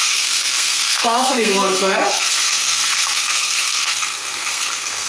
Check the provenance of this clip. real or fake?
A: fake